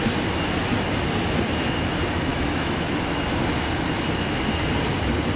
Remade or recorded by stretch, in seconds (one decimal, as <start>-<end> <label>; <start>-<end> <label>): 0.0-2.3 recorded; 2.3-3.2 remade; 3.2-5.4 recorded